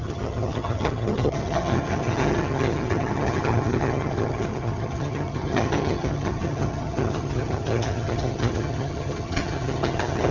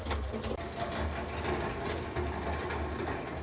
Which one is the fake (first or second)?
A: first